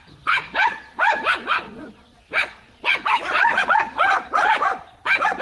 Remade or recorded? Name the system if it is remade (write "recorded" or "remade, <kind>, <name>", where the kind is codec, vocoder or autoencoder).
remade, vocoder, Vocos